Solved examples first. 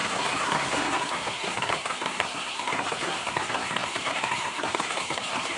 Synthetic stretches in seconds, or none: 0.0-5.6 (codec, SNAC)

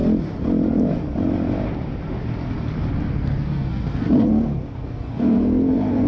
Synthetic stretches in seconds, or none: 3.1-6.1 (codec, SNAC)

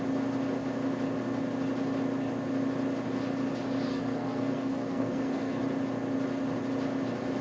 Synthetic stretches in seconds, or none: 3.9-5.6 (codec, SNAC)

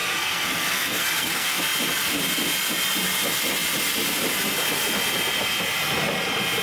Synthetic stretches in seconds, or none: 0.0-1.6 (codec, SNAC)

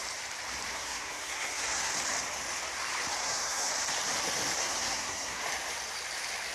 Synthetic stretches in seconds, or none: 0.7-1.9 (codec, SNAC); 3.2-3.7; 4.6-5.4

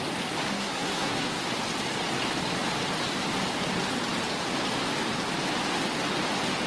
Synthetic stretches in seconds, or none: 0.5-1.4 (codec, SNAC)

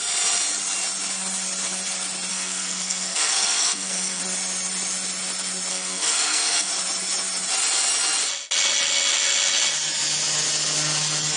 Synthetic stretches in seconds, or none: 2.3-4.2 (codec, SNAC); 5.7-6.7

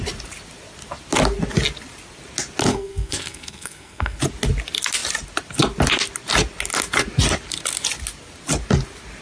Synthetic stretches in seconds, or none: 2.7-4.2 (codec, SNAC)